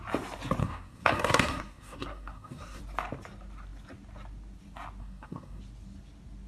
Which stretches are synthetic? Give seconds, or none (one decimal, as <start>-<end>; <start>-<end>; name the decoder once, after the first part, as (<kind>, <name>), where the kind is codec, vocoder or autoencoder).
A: 0.6-2.8 (codec, SNAC); 5.0-5.6